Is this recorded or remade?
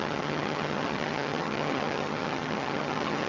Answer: remade